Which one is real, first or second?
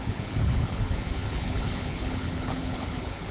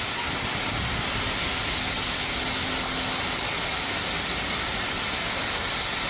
second